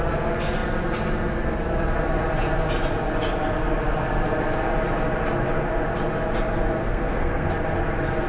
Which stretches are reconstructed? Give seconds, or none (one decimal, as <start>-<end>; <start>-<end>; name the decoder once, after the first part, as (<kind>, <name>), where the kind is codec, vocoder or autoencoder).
6.8-7.5 (codec, SNAC)